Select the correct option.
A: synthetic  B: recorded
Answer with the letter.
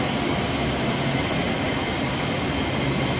B